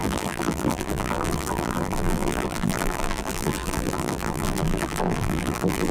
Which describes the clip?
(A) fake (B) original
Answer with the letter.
A